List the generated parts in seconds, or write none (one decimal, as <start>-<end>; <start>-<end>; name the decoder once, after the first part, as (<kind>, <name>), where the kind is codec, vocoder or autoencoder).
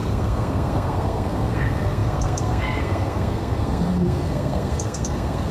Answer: 0.0-5.5 (codec, SNAC)